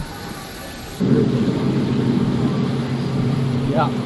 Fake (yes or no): no